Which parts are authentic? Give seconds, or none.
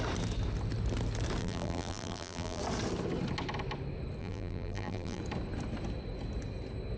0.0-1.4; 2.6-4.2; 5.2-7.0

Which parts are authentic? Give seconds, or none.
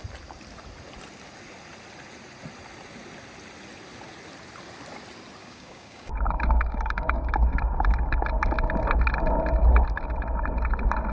0.0-5.4; 7.3-11.1